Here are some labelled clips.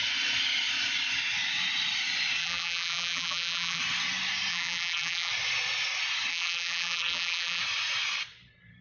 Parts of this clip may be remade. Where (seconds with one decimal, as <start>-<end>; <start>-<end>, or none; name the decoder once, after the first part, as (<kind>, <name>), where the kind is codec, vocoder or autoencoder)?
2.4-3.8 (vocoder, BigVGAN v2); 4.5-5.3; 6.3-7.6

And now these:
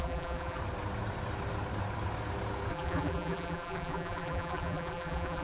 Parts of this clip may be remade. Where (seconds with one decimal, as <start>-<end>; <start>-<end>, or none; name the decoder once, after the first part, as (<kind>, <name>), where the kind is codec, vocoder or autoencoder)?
0.0-0.6 (vocoder, BigVGAN v2); 2.7-5.4

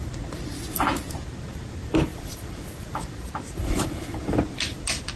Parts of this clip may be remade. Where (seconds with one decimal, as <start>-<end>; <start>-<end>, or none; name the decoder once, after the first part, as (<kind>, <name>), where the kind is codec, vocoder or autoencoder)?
2.1-2.8 (vocoder, BigVGAN v2)

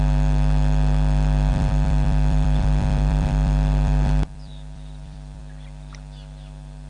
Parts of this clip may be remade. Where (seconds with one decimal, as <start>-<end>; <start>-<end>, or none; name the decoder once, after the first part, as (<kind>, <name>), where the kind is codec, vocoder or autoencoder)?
1.5-5.4 (vocoder, BigVGAN v2)

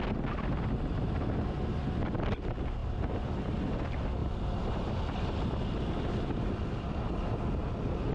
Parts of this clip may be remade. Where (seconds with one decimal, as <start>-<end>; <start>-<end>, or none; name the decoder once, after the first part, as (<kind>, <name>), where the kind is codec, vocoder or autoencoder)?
4.2-4.9 (vocoder, BigVGAN v2)

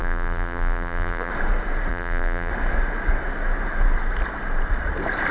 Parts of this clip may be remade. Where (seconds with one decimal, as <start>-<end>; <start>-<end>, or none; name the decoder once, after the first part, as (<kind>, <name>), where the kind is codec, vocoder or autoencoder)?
0.0-1.3 (vocoder, BigVGAN v2); 1.9-2.5

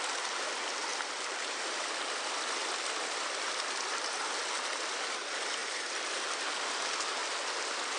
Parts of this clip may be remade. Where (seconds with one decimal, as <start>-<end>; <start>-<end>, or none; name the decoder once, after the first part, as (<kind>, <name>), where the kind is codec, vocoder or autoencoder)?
0.9-3.5 (vocoder, BigVGAN v2); 5.6-6.8; 7.2-8.0

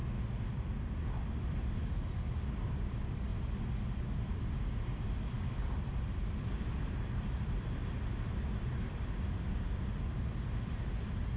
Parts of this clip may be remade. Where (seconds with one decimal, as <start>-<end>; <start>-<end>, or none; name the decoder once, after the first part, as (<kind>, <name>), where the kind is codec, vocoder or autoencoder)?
1.4-3.3 (vocoder, BigVGAN v2); 4.2-11.4